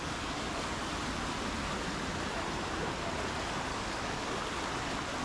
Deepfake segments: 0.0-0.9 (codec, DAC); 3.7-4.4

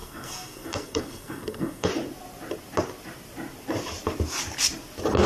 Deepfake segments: 0.0-1.9 (codec, SNAC)

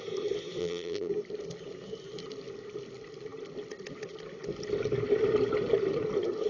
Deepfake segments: 0.6-1.1 (vocoder, BigVGAN v2)

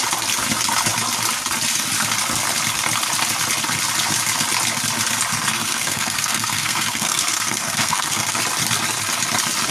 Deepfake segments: 5.3-8.4 (codec, SNAC)